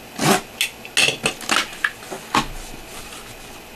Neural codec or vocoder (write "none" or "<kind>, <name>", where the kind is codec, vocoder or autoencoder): none